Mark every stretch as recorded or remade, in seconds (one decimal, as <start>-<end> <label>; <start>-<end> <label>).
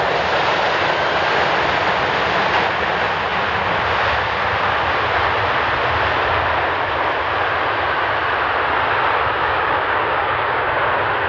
0.0-9.4 recorded; 9.4-10.8 remade; 10.8-11.3 recorded